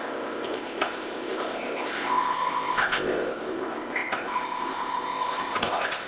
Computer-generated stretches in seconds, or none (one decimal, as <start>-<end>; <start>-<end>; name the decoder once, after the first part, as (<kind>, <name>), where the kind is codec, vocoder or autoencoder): 0.0-6.1 (codec, ZipCodec)